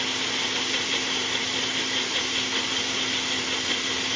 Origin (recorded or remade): recorded